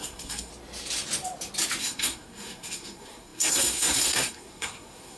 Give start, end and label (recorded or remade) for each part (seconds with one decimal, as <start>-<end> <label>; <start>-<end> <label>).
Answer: 0.0-0.5 remade; 0.5-1.8 recorded; 1.8-5.2 remade

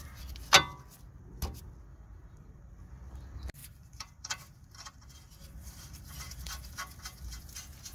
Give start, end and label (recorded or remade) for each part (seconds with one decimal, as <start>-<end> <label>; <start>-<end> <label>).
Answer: 0.0-1.9 recorded; 1.9-2.7 remade; 2.7-3.6 recorded; 3.6-7.4 remade; 7.4-7.9 recorded